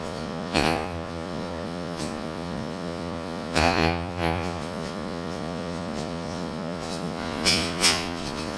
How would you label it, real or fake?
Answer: fake